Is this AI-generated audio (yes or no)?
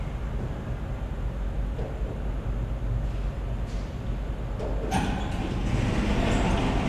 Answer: no